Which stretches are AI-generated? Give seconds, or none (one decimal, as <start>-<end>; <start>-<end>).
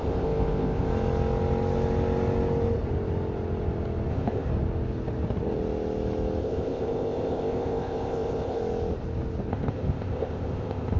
0.0-0.9; 4.1-4.5; 6.4-8.6; 9.5-11.0